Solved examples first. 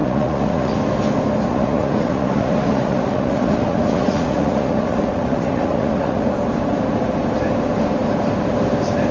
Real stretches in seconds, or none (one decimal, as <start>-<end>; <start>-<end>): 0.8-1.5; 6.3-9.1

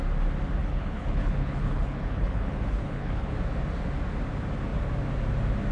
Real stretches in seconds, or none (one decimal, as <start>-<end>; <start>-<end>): 0.0-0.6; 3.3-5.7

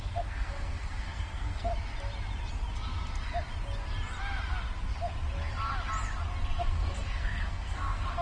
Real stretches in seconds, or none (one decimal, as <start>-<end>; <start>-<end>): 1.7-6.6

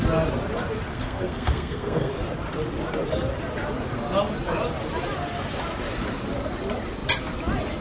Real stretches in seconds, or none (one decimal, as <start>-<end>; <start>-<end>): 0.0-0.9; 2.1-7.8

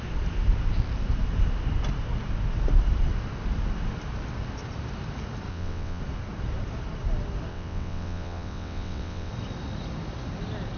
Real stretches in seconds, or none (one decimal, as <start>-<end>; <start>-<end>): 0.0-5.5; 6.0-7.5; 9.3-10.8

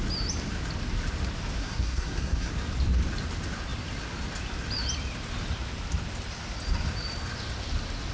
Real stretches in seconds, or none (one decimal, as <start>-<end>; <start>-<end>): 0.0-1.6; 2.5-8.1